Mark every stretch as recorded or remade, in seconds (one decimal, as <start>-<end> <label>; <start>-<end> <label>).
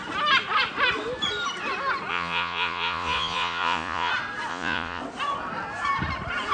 0.0-2.1 recorded; 2.1-4.1 remade; 4.1-4.5 recorded; 4.5-5.0 remade; 5.0-6.5 recorded